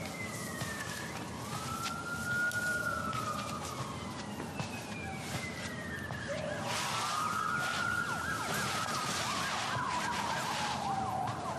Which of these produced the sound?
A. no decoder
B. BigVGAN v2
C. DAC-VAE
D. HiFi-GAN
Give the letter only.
A